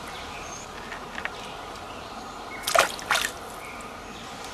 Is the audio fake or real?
real